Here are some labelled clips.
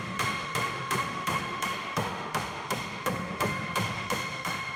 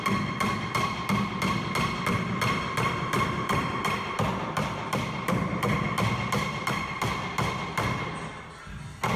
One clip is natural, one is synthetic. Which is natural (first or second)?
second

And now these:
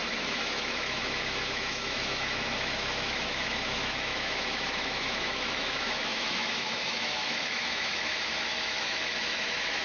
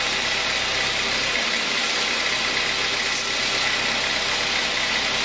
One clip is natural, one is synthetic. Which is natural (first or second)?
second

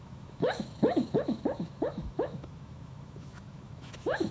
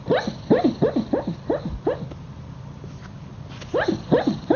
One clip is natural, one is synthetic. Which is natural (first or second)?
second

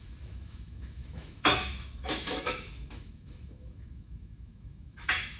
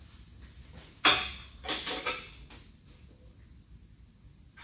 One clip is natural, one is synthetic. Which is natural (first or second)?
second